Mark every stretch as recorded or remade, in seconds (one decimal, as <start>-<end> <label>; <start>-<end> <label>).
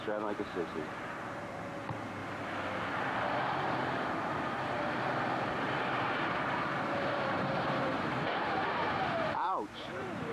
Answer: 0.0-2.2 remade; 2.2-3.4 recorded; 3.4-10.3 remade